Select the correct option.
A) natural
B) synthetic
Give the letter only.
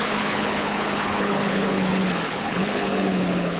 B